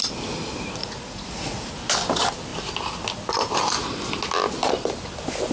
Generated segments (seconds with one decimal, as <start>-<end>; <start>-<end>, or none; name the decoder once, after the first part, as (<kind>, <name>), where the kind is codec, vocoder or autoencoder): 0.8-1.7 (vocoder, Vocos)